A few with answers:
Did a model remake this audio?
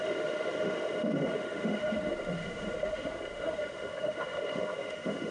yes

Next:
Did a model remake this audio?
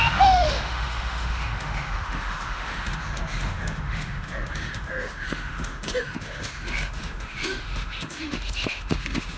yes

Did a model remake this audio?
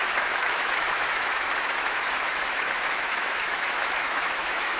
yes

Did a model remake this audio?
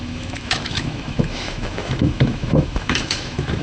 yes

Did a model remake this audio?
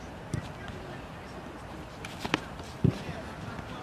no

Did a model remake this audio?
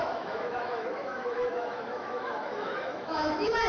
yes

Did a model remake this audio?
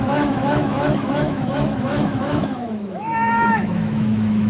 yes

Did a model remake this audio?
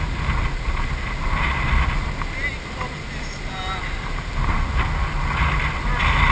no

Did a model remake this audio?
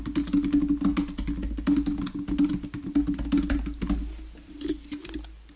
no